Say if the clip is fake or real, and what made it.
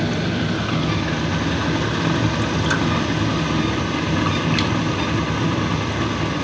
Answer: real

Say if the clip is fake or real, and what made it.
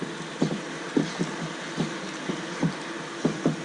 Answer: real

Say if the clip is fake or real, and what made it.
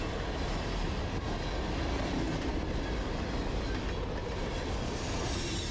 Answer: real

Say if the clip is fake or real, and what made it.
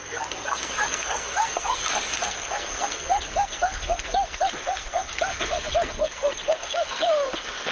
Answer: fake, codec, SNAC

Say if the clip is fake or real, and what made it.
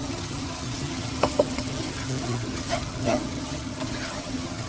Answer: fake, vocoder, HiFi-GAN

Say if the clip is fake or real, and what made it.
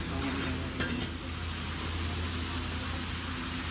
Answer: real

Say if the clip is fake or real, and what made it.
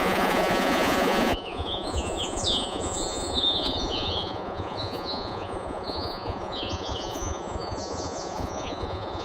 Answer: fake, vocoder, Vocos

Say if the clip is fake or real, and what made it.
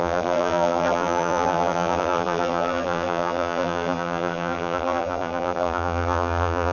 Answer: fake, vocoder, BigVGAN v2